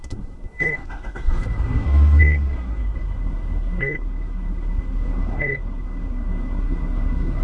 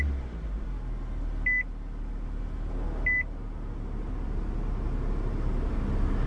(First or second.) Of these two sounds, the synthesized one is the first